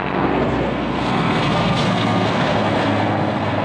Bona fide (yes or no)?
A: no